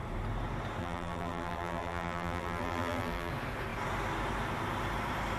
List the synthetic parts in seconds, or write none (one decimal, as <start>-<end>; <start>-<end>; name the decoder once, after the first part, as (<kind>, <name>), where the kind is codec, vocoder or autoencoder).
0.8-3.3 (vocoder, BigVGAN v2)